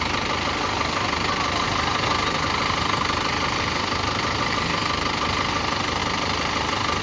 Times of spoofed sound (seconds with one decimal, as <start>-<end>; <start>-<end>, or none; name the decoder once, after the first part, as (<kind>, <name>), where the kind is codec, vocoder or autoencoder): none